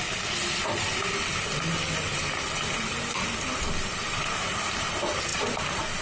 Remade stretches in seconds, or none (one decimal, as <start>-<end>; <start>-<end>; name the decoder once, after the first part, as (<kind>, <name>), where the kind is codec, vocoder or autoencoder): none